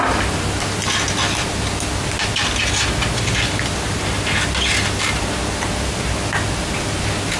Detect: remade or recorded recorded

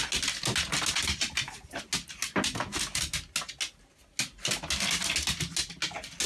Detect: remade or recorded recorded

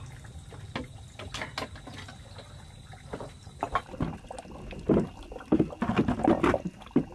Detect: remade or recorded recorded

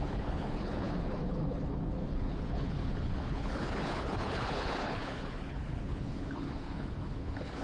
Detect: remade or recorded remade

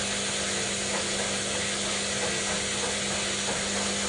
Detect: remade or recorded recorded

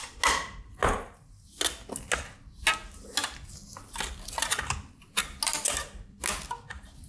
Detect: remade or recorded recorded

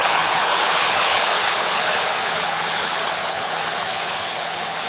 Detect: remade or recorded remade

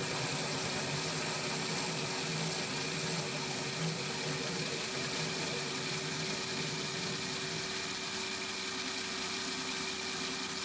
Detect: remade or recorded recorded